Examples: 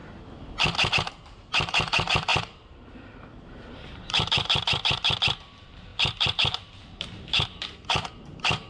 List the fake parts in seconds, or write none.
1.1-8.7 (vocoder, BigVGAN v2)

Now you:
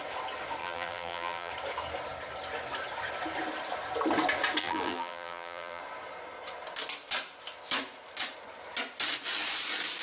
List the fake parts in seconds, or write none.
0.6-1.5 (vocoder, BigVGAN v2); 4.6-5.8

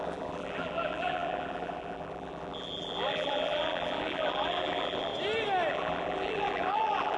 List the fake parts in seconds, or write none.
0.0-5.1 (vocoder, BigVGAN v2); 5.7-7.2

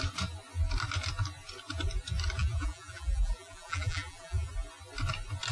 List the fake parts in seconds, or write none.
2.4-4.5 (vocoder, BigVGAN v2)

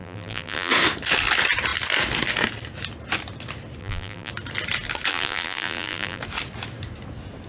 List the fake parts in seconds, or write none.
0.0-0.7 (vocoder, BigVGAN v2); 3.8-4.3; 5.1-6.2

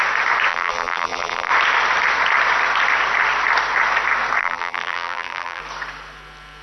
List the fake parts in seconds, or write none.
0.5-1.5 (vocoder, BigVGAN v2); 4.4-5.6

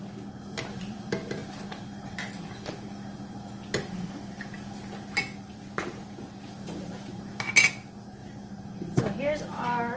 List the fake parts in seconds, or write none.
5.3-7.2 (vocoder, BigVGAN v2); 8.2-9.0